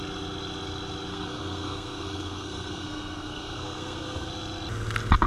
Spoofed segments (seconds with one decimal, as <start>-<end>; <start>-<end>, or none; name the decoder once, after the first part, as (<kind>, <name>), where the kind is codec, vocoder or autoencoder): 1.1-4.3 (codec, SNAC)